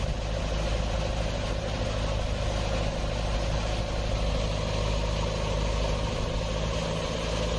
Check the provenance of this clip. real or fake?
real